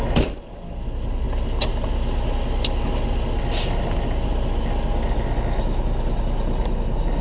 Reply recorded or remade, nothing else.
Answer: recorded